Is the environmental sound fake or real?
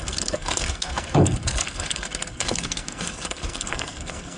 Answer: fake